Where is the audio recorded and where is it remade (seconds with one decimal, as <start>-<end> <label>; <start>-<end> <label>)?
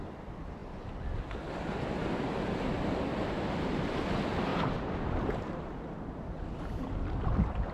0.0-4.5 recorded; 4.5-5.9 remade; 5.9-7.7 recorded